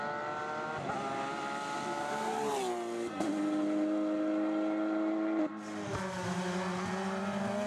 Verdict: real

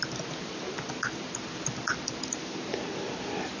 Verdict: real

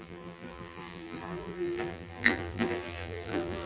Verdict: fake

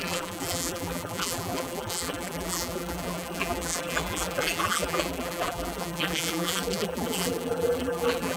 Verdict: fake